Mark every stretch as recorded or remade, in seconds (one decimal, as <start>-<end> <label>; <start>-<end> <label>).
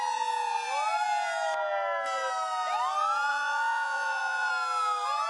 0.0-3.3 recorded; 3.3-4.5 remade; 4.5-5.3 recorded